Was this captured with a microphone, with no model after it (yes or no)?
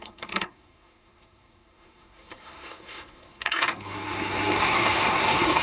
no